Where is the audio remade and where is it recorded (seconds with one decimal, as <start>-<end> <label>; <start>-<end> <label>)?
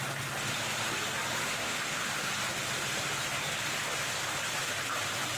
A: 0.0-1.6 recorded; 1.6-2.1 remade; 2.1-5.4 recorded